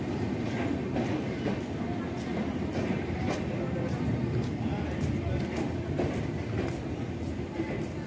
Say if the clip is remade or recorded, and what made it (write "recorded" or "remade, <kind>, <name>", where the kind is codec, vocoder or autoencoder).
recorded